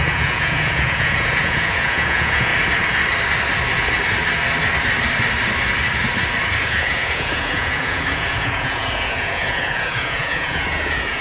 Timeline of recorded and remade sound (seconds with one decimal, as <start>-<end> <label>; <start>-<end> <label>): 0.0-2.5 remade; 2.5-6.6 recorded; 6.6-11.2 remade